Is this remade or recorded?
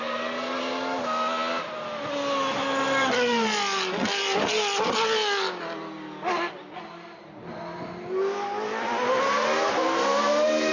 recorded